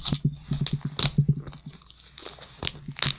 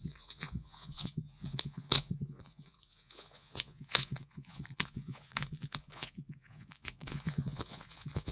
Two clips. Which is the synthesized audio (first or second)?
second